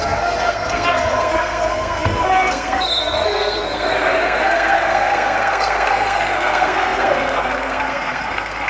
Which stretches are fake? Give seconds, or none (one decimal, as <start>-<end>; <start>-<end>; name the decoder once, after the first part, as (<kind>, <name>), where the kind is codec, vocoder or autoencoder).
0.0-8.7 (codec, SNAC)